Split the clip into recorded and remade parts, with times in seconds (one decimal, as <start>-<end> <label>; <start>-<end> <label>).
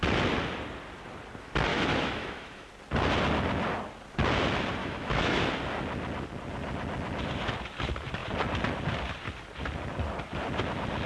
0.0-1.7 recorded; 1.7-2.7 remade; 2.7-4.8 recorded; 4.8-5.4 remade; 5.4-11.1 recorded